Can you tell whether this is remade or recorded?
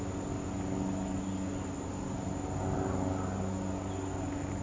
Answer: recorded